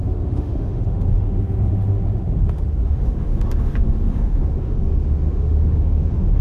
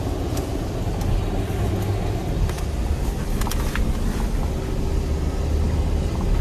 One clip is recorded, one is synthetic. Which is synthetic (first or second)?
first